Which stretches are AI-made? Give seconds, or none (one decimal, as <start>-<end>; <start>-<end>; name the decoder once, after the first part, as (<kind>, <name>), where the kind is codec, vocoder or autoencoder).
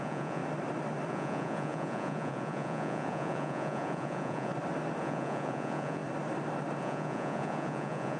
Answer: 0.0-0.4 (vocoder, Vocos); 1.1-4.5; 5.0-6.0; 6.8-8.2